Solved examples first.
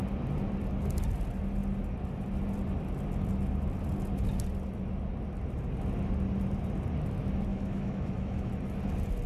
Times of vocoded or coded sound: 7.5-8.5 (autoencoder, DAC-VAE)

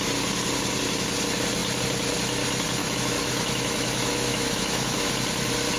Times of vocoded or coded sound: 2.8-5.1 (autoencoder, DAC-VAE)